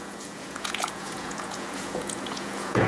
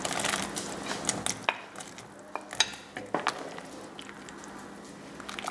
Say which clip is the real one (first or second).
second